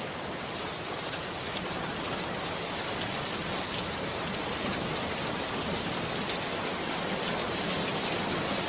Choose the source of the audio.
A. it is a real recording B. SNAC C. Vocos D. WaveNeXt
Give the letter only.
A